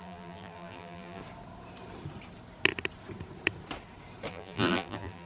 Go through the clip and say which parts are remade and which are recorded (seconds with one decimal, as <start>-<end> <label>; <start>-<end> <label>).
0.0-1.2 remade; 1.2-4.3 recorded; 4.3-5.3 remade